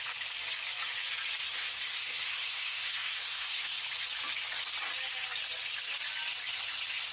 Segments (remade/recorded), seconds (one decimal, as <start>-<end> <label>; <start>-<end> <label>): 0.0-1.4 recorded; 1.4-3.8 remade; 3.8-7.1 recorded